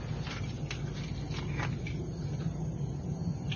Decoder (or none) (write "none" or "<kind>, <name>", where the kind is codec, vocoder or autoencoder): none